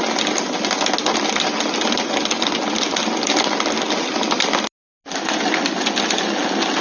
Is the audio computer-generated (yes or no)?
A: no